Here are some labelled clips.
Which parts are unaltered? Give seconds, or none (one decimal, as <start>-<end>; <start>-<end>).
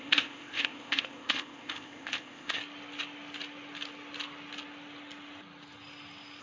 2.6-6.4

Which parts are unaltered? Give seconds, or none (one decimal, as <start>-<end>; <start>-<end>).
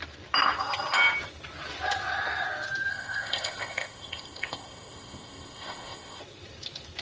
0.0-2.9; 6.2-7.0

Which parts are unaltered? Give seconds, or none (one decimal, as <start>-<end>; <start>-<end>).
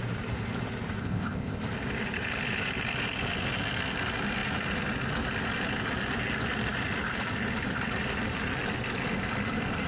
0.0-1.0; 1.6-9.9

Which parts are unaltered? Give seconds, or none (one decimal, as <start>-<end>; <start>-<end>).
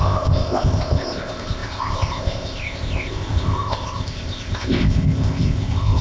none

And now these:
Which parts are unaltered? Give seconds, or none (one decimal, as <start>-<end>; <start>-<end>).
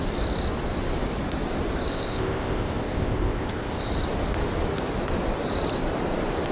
0.0-1.9; 3.9-6.5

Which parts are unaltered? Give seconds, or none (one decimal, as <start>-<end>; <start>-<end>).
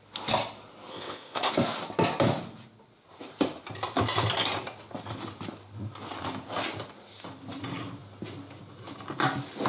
0.0-0.9; 1.5-9.7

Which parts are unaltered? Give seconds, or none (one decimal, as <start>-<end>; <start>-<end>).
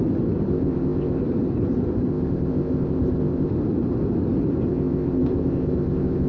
0.0-0.5; 1.2-2.1; 3.5-4.7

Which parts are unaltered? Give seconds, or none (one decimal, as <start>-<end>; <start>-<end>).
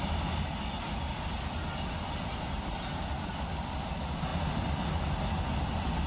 0.0-6.1